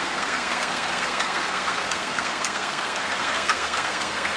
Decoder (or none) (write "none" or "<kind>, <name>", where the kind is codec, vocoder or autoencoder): codec, SNAC